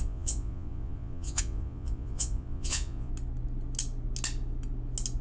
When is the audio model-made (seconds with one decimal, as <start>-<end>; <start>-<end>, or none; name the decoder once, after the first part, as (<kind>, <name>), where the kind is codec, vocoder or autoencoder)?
0.0-3.1 (vocoder, Vocos)